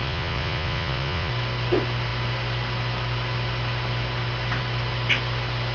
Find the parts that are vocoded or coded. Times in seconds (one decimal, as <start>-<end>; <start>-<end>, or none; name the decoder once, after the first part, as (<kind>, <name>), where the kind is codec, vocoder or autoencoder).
0.0-1.3 (vocoder, Vocos)